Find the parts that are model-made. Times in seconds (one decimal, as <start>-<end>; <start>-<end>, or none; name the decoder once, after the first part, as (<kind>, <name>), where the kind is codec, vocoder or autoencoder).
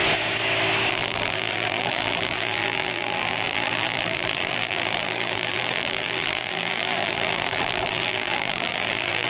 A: 0.9-9.3 (vocoder, BigVGAN v2)